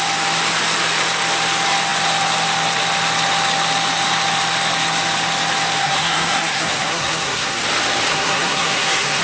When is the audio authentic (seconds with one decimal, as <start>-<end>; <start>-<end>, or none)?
0.0-5.8; 7.6-8.1